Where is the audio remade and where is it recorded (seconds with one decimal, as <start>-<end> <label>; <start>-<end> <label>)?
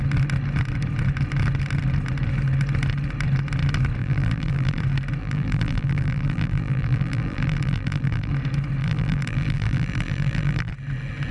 0.0-4.0 recorded; 4.0-4.8 remade; 4.8-5.2 recorded; 5.2-8.3 remade; 8.3-8.8 recorded; 8.8-10.7 remade; 10.7-11.3 recorded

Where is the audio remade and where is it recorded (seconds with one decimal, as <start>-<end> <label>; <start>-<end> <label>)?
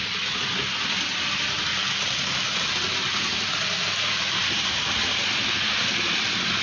0.0-6.6 recorded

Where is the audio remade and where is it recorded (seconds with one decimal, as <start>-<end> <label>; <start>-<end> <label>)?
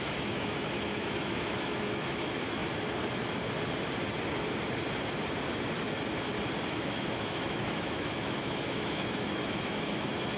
0.0-2.6 remade; 2.6-6.7 recorded; 6.7-10.4 remade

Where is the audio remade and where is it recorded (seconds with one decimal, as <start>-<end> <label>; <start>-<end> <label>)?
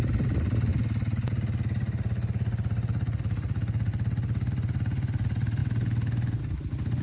0.0-7.0 recorded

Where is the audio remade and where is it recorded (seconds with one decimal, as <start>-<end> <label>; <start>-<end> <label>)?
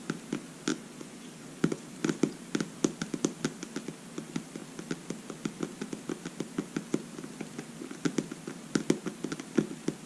0.0-0.7 recorded; 0.7-1.8 remade; 1.8-10.1 recorded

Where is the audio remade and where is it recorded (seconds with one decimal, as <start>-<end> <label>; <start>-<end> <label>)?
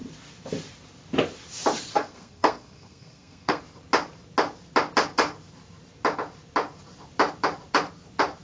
0.0-1.9 recorded; 1.9-3.6 remade; 3.6-8.4 recorded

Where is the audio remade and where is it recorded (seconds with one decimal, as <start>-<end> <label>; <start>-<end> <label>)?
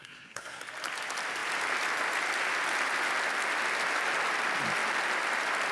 0.0-0.6 remade; 0.6-5.7 recorded